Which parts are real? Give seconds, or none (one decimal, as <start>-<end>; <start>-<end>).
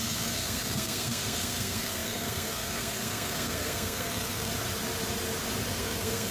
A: 4.5-5.7